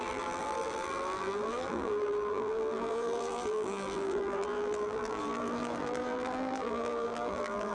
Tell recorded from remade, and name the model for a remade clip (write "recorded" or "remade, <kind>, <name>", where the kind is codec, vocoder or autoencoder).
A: remade, vocoder, BigVGAN v2